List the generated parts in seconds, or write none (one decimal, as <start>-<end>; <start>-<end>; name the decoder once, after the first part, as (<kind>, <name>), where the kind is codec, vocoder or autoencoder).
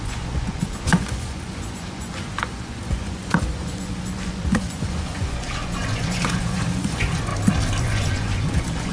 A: 0.0-7.3 (vocoder, Vocos); 7.8-8.9